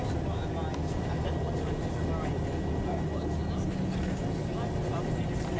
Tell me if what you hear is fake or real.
real